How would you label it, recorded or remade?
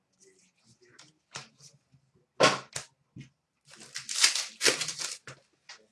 recorded